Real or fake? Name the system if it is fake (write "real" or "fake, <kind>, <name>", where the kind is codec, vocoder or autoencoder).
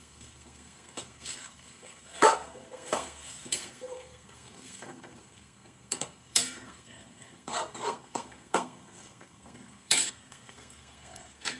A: fake, codec, SNAC